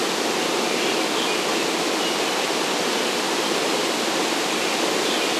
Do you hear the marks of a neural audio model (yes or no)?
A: no